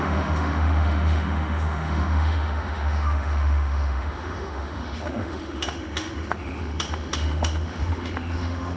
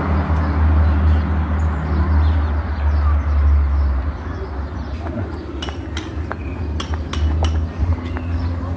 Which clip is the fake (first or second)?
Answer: first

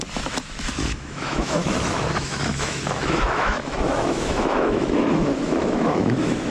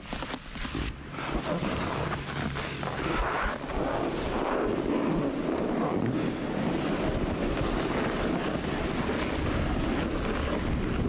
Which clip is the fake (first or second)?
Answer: first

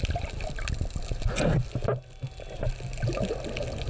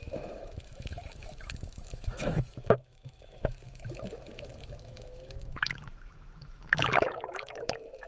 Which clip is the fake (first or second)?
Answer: second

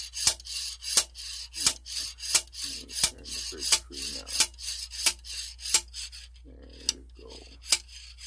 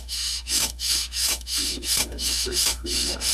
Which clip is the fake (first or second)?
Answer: second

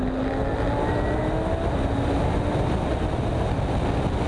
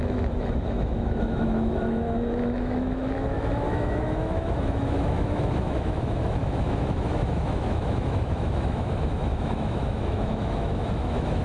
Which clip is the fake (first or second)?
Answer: second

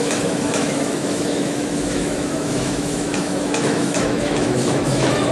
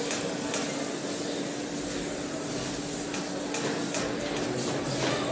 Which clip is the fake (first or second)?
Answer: first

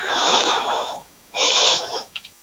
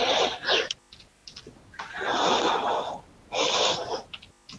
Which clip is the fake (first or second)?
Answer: first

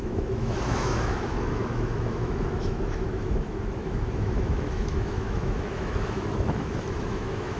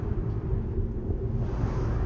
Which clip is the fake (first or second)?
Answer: first